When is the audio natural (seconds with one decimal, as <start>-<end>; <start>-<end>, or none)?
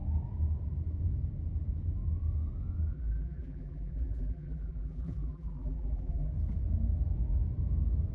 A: 0.0-2.9; 6.3-8.1